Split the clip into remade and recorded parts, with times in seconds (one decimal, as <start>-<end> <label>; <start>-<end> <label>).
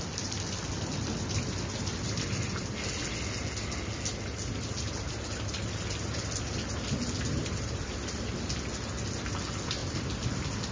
0.0-10.7 recorded